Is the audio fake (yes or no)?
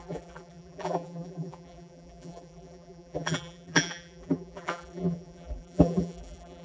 yes